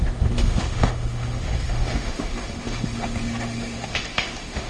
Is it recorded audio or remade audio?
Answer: remade